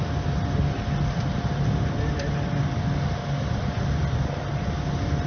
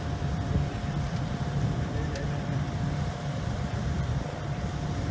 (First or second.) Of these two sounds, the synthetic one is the second